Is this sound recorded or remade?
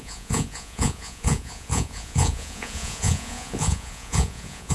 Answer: remade